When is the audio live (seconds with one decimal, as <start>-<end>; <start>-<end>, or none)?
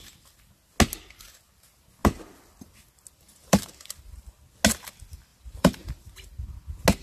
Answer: 0.0-3.4; 4.4-5.3; 5.9-7.0